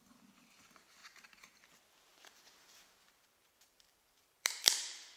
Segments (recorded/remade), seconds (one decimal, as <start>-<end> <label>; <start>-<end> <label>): 0.0-1.0 recorded; 1.0-1.6 remade; 1.6-2.1 recorded; 2.1-5.2 remade